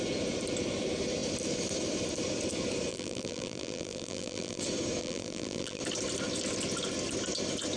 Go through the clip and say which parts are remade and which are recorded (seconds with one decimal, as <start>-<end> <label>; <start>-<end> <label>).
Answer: 0.0-2.9 recorded; 2.9-4.6 remade; 4.6-5.0 recorded; 5.0-5.8 remade; 5.8-7.8 recorded